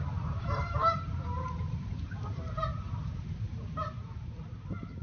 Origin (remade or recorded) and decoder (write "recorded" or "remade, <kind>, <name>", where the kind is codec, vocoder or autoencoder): remade, vocoder, BigVGAN v2